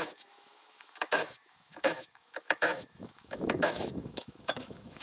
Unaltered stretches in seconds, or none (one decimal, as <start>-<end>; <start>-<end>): none